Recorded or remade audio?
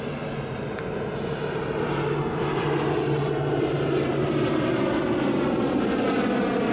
recorded